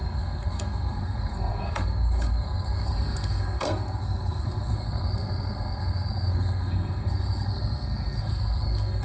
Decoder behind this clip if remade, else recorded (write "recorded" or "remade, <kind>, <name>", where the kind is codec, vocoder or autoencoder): remade, codec, SNAC